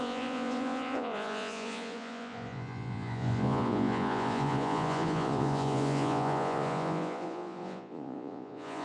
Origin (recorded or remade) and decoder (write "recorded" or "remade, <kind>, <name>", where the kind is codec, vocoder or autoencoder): remade, vocoder, Vocos